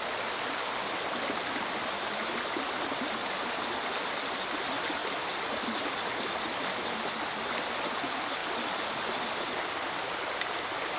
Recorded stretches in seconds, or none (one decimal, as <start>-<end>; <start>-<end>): 0.0-11.0